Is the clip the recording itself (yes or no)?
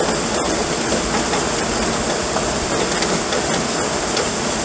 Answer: no